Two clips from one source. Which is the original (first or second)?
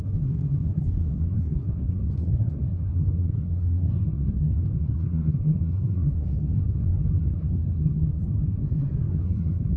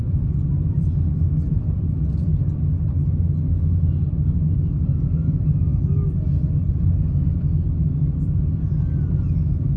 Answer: second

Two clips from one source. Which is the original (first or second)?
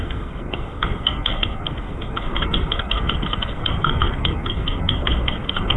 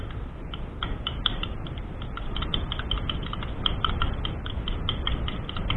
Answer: second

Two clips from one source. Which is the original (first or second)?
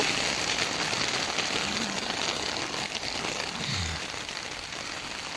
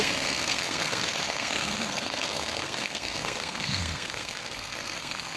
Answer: first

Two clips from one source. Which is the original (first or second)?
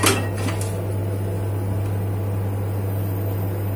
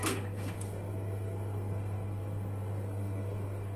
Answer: first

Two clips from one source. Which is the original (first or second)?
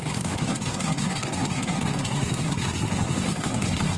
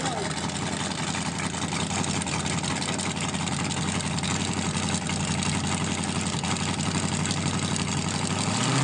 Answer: second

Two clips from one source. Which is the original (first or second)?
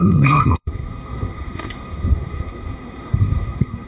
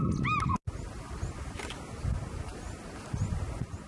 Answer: second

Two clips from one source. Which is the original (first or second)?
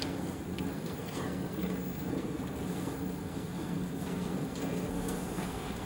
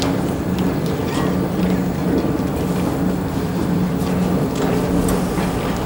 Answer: second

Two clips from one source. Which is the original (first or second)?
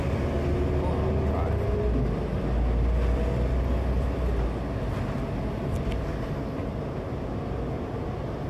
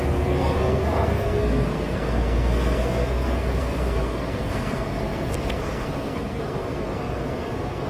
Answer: first